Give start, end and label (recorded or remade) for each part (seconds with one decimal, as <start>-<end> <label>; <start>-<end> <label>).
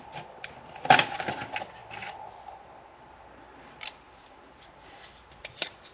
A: 0.0-1.8 remade; 1.8-3.9 recorded; 3.9-5.9 remade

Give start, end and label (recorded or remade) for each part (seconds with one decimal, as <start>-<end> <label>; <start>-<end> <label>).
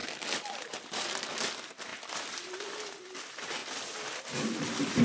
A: 0.0-3.6 remade; 3.6-4.2 recorded; 4.2-5.0 remade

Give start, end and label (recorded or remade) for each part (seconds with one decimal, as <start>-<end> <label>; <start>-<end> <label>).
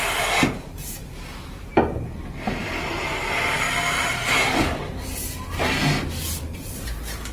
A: 0.0-1.7 remade; 1.7-6.1 recorded; 6.1-7.3 remade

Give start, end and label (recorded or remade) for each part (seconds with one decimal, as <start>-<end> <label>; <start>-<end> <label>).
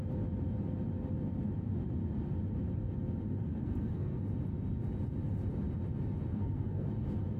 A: 0.0-3.4 recorded; 3.4-4.2 remade; 4.2-6.3 recorded; 6.3-6.9 remade; 6.9-7.4 recorded